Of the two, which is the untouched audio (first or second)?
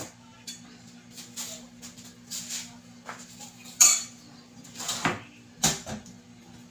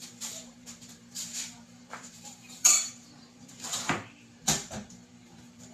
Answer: first